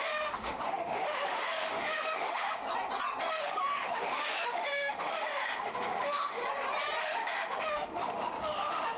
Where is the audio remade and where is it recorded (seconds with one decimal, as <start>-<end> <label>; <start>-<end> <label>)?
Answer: 0.0-2.6 remade; 2.6-3.3 recorded; 3.3-6.4 remade; 6.4-7.0 recorded; 7.0-9.0 remade